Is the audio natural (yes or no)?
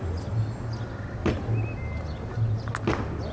yes